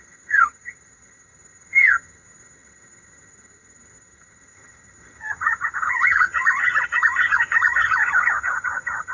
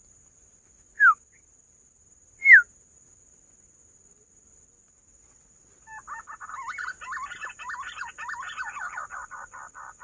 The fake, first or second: first